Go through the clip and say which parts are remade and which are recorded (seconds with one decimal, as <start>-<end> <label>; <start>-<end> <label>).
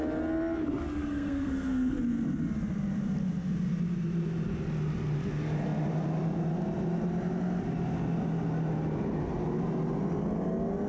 0.0-1.0 recorded; 1.0-2.0 remade; 2.0-10.9 recorded